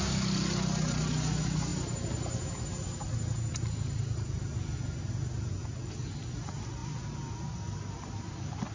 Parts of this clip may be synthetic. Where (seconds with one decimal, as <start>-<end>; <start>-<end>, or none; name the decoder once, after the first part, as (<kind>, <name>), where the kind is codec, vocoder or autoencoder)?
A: none